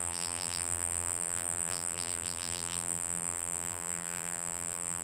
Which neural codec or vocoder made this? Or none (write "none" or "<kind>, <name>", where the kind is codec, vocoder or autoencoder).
vocoder, BigVGAN v2